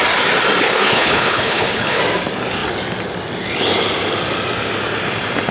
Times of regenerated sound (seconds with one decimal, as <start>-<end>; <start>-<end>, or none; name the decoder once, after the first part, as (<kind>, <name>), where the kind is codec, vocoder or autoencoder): 0.6-2.0 (codec, HILCodec)